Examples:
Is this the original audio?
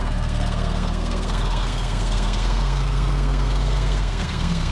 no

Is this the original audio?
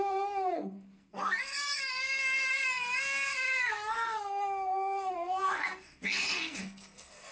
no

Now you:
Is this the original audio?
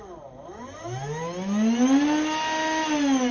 yes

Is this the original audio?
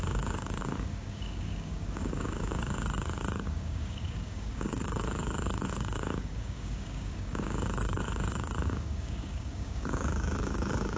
no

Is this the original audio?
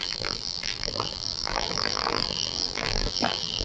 no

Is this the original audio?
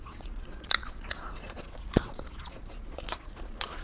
no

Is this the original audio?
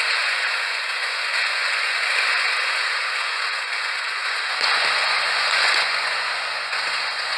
no